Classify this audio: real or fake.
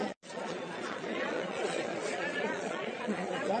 fake